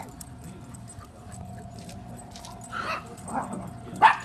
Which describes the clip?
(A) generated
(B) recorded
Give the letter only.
B